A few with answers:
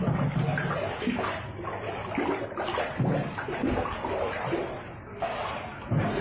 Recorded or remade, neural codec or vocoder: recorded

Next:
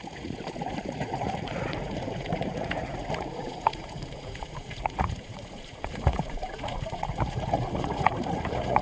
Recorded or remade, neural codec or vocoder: remade, vocoder, Vocos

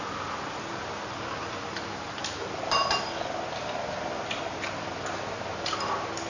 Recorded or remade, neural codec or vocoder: recorded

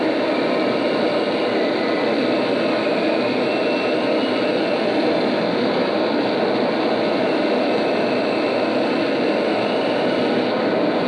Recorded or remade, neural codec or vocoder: recorded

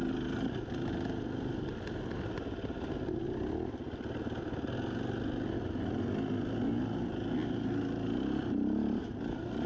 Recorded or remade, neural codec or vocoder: recorded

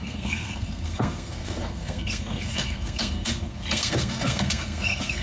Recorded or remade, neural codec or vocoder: remade, codec, SNAC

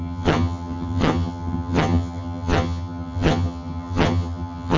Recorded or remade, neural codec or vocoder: remade, vocoder, HiFi-GAN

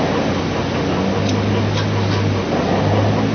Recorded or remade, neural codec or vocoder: recorded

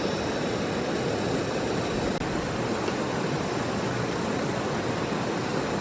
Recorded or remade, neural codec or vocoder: recorded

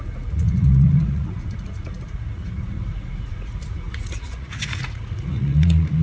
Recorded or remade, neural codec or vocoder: remade, vocoder, Vocos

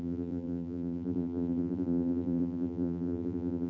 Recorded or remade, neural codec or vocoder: remade, vocoder, BigVGAN v2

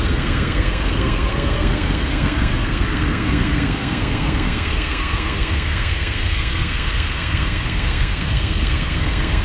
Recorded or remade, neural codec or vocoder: remade, codec, SNAC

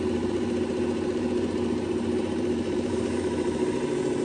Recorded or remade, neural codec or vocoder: remade, vocoder, BigVGAN v2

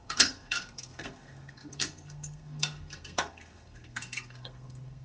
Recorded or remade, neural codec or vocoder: remade, codec, SNAC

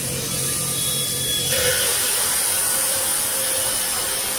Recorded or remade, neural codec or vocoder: remade, vocoder, BigVGAN v2